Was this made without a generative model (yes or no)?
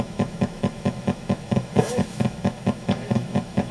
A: no